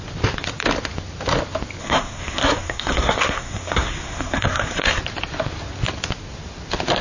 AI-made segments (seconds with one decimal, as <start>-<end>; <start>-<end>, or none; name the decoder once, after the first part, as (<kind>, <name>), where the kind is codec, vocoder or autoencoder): 1.8-5.0 (codec, SNAC)